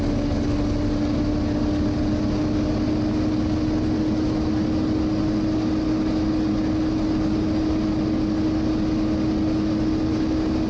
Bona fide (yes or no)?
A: yes